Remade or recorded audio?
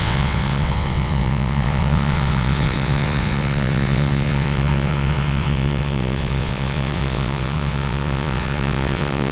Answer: remade